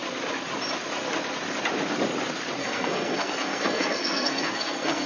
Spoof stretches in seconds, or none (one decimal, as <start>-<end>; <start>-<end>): 2.6-5.1